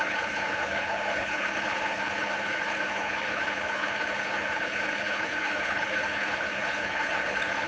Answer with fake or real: fake